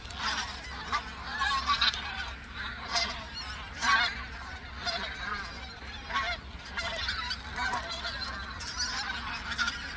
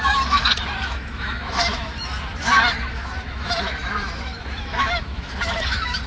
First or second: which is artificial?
second